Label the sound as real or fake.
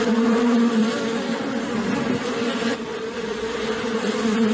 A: fake